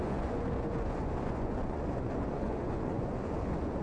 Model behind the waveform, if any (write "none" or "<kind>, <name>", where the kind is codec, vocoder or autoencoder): vocoder, Vocos